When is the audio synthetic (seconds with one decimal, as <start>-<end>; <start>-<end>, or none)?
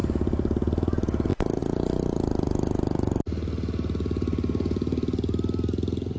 none